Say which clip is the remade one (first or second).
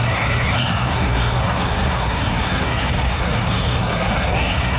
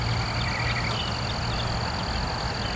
first